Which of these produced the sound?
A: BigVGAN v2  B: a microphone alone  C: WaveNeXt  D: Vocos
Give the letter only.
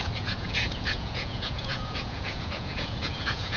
D